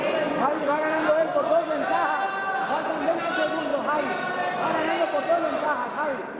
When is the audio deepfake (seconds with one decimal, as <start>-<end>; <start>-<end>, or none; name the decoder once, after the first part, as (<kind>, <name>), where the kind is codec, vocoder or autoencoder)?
0.5-1.0 (codec, DAC)